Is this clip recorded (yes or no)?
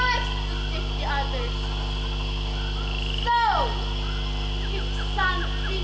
yes